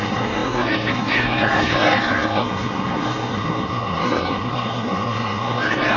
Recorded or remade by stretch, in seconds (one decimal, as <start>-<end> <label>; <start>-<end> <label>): 0.0-6.0 remade